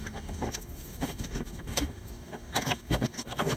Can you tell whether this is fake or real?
fake